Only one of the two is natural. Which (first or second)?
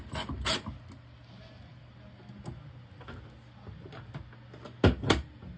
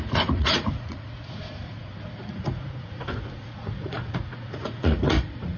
first